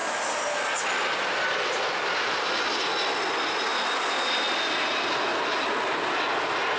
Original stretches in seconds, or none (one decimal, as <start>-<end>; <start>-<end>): 0.0-6.8